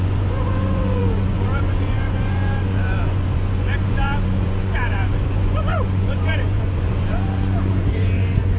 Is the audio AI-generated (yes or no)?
yes